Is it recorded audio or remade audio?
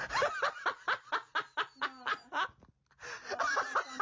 recorded